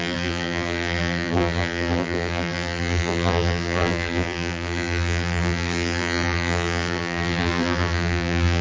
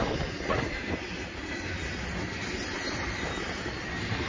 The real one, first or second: second